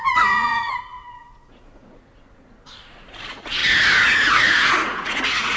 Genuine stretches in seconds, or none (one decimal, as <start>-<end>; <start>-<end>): 3.6-4.3